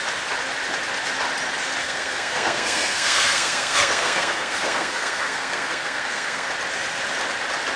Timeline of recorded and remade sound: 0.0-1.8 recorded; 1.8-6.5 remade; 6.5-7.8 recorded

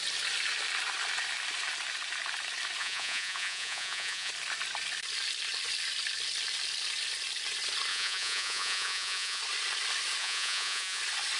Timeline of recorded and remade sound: 0.0-2.8 recorded; 2.8-4.3 remade; 4.3-7.9 recorded; 7.9-9.4 remade; 9.4-10.2 recorded; 10.2-11.0 remade; 11.0-11.4 recorded